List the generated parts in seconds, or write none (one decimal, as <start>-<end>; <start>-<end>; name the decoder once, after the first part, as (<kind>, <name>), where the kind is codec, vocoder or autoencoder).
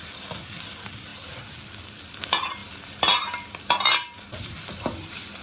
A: 1.1-2.2 (vocoder, BigVGAN v2); 2.6-5.4